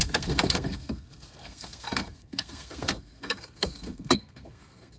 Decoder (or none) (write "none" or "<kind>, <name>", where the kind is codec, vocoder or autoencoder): codec, SNAC